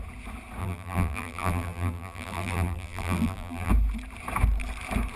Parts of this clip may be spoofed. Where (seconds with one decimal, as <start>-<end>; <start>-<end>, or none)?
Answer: 0.6-3.7